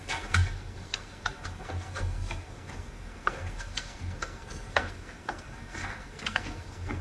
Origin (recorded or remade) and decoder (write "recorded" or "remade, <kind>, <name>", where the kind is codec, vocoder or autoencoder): remade, codec, SNAC